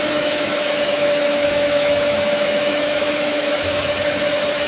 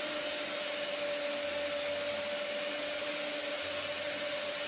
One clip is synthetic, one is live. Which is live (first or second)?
second